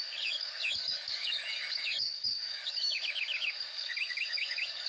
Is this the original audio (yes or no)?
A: no